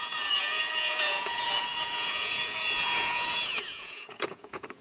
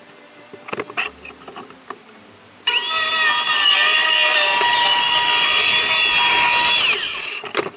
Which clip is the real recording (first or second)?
second